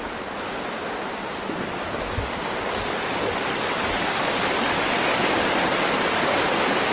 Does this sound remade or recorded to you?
recorded